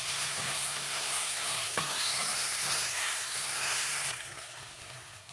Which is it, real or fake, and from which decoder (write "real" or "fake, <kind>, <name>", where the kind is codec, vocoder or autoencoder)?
fake, codec, SNAC